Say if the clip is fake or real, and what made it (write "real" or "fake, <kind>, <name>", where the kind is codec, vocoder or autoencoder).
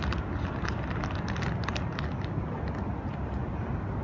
real